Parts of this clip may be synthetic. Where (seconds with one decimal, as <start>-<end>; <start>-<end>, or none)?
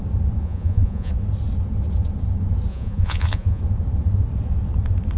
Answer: 0.4-1.1; 2.7-3.6